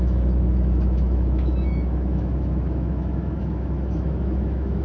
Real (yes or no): no